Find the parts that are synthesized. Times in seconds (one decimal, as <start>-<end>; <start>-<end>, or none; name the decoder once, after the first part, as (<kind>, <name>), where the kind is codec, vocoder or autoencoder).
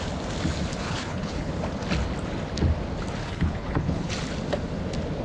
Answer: 0.7-1.5 (codec, HILCodec); 3.2-4.1